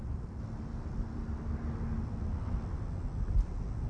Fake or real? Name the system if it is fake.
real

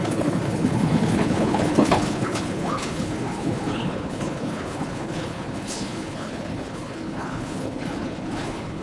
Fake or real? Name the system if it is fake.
fake, codec, HILCodec